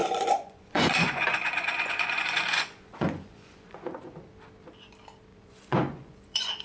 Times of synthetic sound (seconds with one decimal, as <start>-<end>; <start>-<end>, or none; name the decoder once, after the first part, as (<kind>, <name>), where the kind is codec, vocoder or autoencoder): 0.0-4.0 (vocoder, Vocos); 5.3-6.6